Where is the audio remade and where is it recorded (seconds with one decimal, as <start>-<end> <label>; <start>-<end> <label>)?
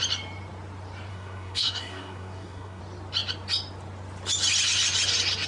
0.0-1.1 recorded; 1.1-2.8 remade; 2.8-5.5 recorded